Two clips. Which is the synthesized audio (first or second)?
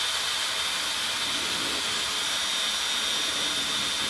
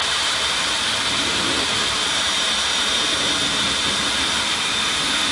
second